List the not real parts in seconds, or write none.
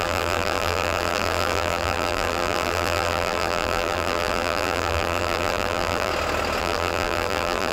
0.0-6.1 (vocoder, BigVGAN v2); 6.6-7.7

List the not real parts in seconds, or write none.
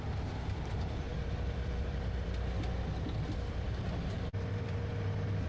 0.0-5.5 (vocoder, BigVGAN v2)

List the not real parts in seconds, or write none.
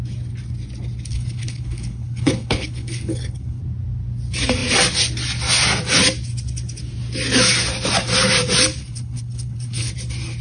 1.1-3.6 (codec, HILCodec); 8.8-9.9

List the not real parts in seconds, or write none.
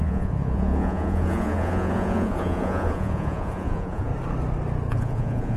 0.0-4.1 (vocoder, Vocos); 4.9-5.6